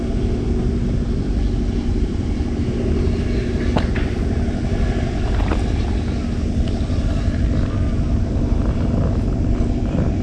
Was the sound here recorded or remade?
recorded